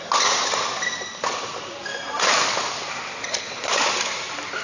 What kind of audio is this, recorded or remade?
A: recorded